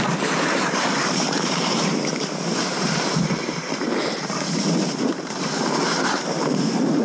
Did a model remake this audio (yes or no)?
yes